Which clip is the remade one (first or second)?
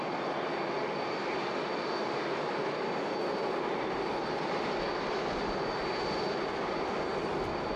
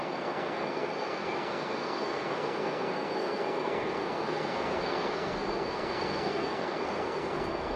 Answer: second